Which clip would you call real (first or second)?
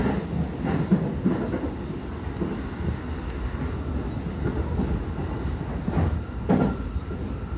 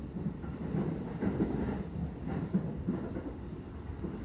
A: first